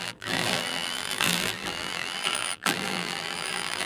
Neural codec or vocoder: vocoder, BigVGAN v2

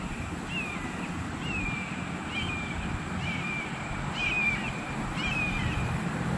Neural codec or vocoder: vocoder, BigVGAN v2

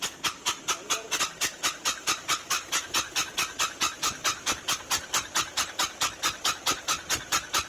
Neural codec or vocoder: vocoder, BigVGAN v2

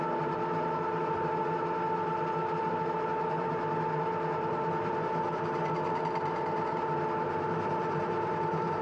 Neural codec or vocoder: vocoder, BigVGAN v2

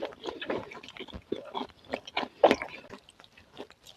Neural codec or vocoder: none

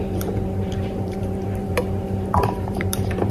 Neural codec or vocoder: vocoder, BigVGAN v2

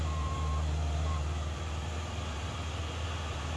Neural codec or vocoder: vocoder, BigVGAN v2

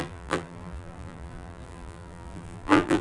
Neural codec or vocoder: vocoder, BigVGAN v2